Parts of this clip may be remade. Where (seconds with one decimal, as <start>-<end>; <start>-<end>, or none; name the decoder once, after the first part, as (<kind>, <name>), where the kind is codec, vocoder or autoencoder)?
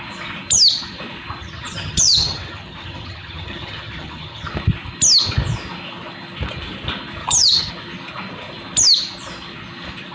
1.4-4.5 (vocoder, HiFi-GAN); 7.2-7.7